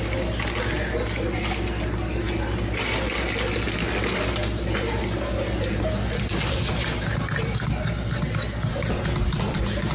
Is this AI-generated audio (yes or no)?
no